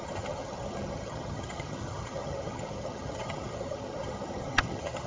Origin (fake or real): fake